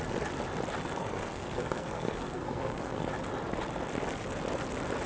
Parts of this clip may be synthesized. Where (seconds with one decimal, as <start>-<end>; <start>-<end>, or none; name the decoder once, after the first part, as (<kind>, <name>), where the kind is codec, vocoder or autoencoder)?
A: 1.0-3.1 (codec, SNAC)